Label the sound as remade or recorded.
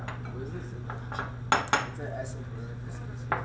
recorded